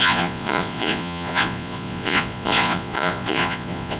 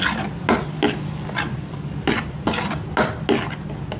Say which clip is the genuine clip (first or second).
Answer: second